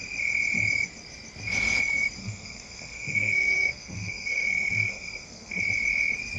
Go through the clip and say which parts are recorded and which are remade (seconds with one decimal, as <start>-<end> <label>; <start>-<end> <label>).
0.0-2.2 recorded; 2.2-5.6 remade; 5.6-6.4 recorded